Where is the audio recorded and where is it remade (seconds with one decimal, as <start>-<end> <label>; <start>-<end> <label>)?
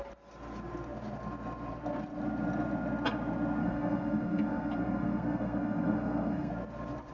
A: 0.0-3.6 recorded; 3.6-6.5 remade; 6.5-7.1 recorded